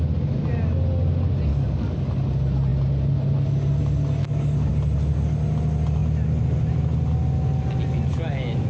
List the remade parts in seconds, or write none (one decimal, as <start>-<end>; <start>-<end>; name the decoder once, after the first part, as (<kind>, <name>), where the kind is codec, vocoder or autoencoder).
1.5-2.1 (codec, DAC); 4.2-4.7